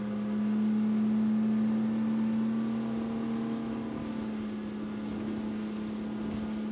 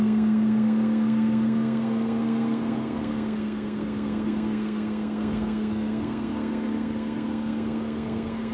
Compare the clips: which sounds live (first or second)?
first